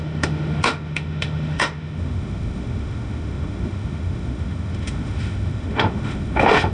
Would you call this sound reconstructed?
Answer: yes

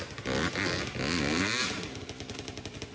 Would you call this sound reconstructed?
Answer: no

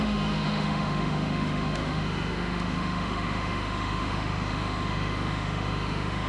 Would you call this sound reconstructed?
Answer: yes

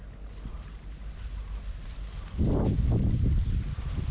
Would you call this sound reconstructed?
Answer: no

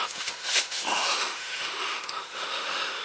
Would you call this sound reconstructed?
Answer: yes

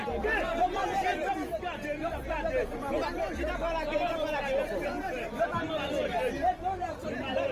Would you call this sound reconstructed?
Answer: no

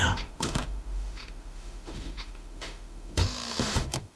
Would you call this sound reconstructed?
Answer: yes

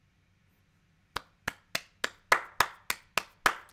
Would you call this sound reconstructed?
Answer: no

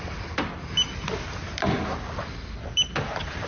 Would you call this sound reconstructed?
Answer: no